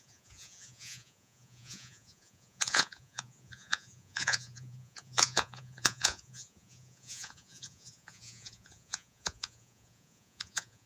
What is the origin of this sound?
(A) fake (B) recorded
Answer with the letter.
A